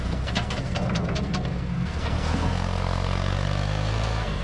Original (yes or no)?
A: no